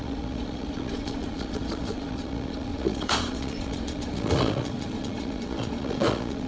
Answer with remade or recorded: remade